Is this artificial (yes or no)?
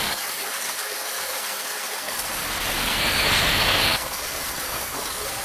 yes